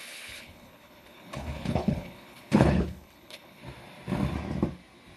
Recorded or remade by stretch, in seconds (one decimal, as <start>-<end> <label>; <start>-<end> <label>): 0.0-3.6 remade; 3.6-5.2 recorded